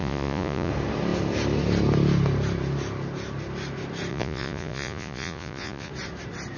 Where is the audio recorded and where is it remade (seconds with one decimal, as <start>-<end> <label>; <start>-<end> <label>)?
0.0-0.7 remade; 0.7-4.1 recorded; 4.1-5.9 remade; 5.9-6.6 recorded